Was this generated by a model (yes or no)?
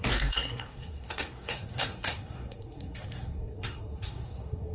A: yes